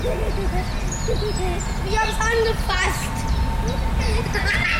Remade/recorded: recorded